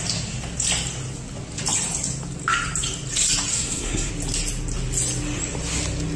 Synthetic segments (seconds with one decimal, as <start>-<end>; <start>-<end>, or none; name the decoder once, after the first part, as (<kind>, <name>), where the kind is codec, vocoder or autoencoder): 3.5-4.1 (codec, SNAC)